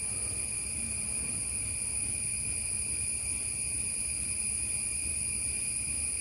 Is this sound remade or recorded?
recorded